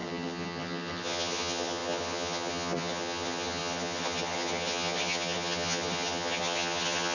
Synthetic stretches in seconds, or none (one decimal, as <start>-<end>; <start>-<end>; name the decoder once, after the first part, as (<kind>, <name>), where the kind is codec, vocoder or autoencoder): 0.0-7.1 (vocoder, HiFi-GAN)

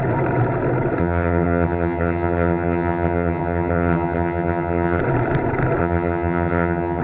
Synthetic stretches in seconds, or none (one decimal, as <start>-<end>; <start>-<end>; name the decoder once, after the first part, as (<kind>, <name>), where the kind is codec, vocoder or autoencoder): 1.0-5.0 (vocoder, HiFi-GAN); 5.8-7.0